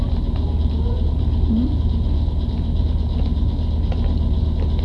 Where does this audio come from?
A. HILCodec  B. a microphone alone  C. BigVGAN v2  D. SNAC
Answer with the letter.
B